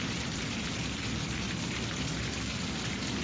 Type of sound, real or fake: real